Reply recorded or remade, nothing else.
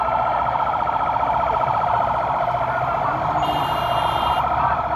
recorded